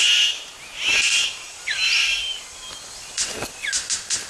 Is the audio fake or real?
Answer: real